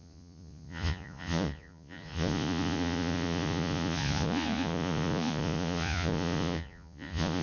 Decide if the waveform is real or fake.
fake